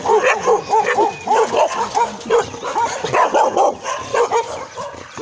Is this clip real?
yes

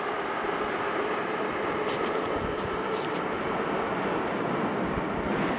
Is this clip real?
yes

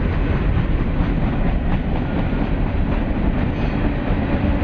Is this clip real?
yes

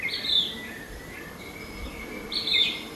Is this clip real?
yes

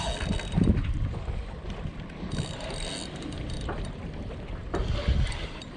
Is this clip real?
yes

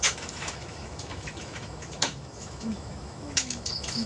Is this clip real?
no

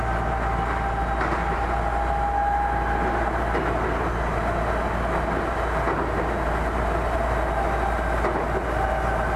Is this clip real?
yes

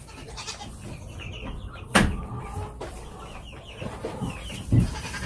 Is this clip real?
yes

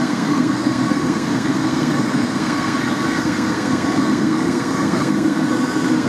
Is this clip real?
no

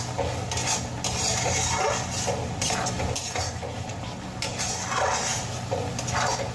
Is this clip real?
yes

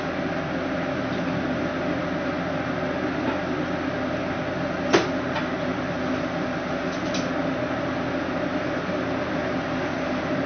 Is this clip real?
yes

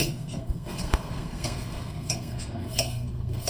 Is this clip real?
no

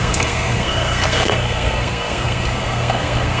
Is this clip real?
no